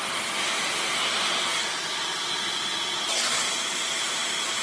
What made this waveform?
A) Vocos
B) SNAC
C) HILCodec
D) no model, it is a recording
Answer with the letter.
D